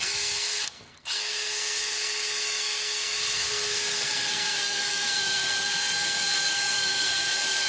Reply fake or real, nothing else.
fake